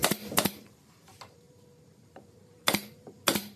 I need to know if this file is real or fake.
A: fake